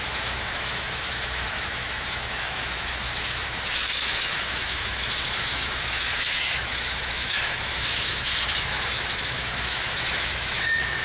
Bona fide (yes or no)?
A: no